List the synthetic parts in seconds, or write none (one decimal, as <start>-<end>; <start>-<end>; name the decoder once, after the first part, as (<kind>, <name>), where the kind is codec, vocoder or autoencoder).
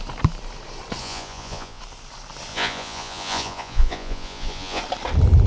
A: 1.0-1.8 (vocoder, Vocos); 2.5-4.8